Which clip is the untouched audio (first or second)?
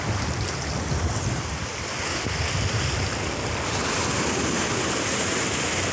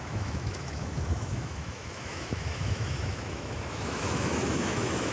first